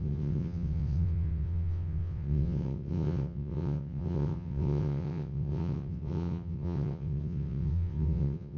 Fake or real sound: fake